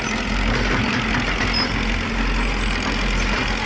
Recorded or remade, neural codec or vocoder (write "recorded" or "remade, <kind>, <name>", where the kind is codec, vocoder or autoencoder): recorded